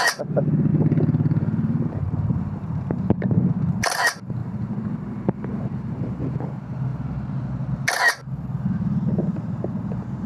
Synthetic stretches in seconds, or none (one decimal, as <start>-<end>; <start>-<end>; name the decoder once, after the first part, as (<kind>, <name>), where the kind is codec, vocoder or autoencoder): 0.7-3.1 (vocoder, BigVGAN v2); 4.4-6.2